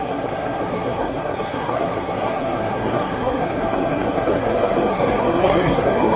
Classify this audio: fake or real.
fake